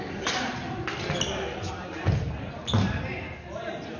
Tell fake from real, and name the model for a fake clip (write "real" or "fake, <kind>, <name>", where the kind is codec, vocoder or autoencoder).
real